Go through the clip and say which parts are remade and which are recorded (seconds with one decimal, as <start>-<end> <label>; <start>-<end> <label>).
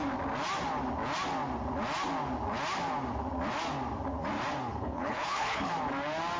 0.0-4.7 recorded; 4.7-5.7 remade; 5.7-6.4 recorded